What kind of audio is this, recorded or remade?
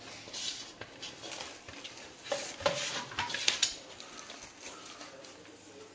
recorded